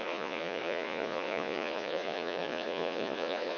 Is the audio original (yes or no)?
no